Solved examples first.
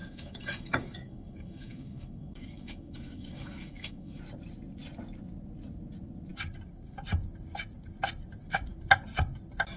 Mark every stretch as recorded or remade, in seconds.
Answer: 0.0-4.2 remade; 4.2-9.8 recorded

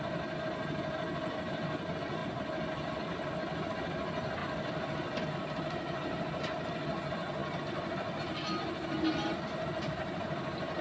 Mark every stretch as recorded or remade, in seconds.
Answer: 0.0-10.8 recorded

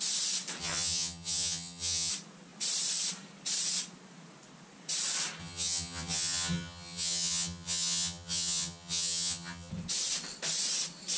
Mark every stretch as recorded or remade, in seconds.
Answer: 0.0-0.6 recorded; 0.6-2.1 remade; 2.1-5.4 recorded; 5.4-9.7 remade; 9.7-11.2 recorded